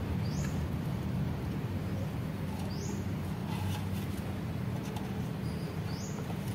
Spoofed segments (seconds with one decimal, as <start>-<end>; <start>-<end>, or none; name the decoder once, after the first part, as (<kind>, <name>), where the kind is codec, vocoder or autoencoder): 0.0-1.9 (vocoder, BigVGAN v2); 2.7-3.4; 5.6-6.5